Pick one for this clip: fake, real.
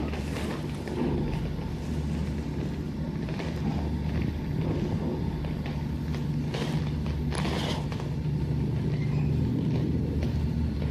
real